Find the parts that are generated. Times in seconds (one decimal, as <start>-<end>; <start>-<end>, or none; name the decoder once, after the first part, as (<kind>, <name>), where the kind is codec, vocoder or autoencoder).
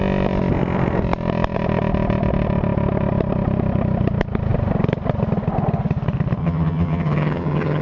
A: 6.4-7.8 (vocoder, HiFi-GAN)